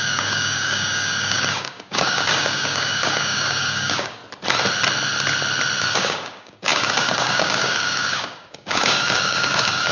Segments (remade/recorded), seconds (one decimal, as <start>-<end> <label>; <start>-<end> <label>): 0.0-4.2 remade; 4.2-5.8 recorded; 5.8-9.9 remade